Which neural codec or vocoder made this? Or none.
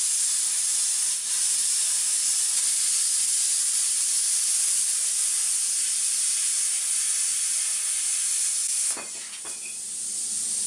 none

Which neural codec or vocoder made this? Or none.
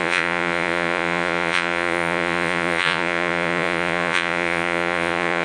vocoder, Vocos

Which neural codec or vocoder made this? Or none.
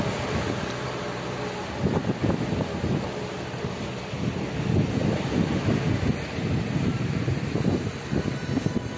none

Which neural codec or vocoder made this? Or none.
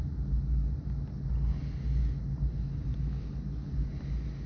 none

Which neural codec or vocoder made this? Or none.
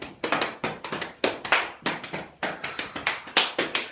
none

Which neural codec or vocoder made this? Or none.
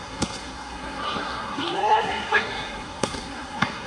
codec, SNAC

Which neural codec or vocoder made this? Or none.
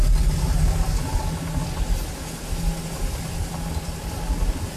none